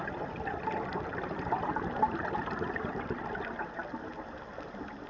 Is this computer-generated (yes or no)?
no